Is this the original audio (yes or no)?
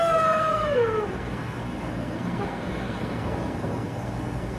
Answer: no